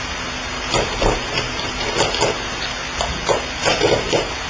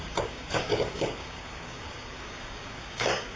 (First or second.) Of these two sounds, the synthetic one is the second